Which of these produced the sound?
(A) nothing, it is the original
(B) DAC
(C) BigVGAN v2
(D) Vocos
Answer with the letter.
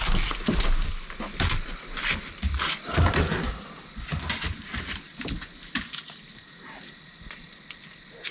A